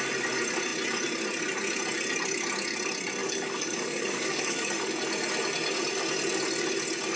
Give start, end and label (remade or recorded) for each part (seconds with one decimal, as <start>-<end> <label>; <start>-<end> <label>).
0.0-3.2 recorded; 3.2-4.9 remade; 4.9-7.2 recorded